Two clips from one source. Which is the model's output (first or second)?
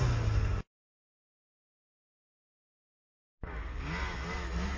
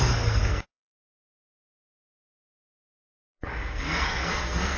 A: second